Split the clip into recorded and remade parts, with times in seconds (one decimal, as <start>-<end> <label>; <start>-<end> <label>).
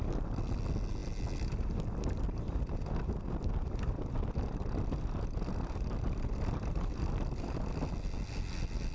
0.0-8.9 recorded